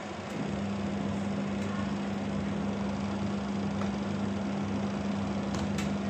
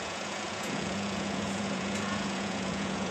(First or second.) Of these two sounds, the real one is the first